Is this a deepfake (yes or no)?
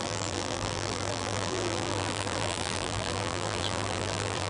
yes